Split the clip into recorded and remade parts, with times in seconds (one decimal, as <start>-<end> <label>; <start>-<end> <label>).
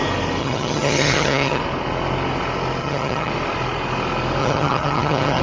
0.0-0.4 recorded; 0.4-1.6 remade; 1.6-2.8 recorded; 2.8-3.3 remade; 3.3-4.4 recorded; 4.4-5.4 remade